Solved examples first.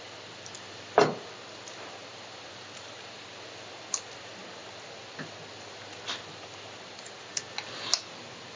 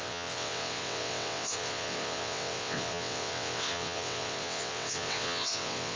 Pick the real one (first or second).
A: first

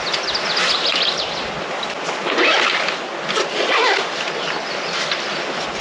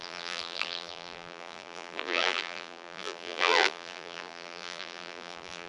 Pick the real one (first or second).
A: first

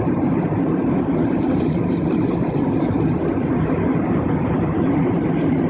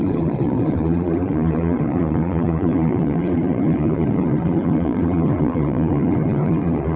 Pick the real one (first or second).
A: first